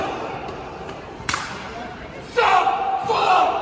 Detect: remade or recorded remade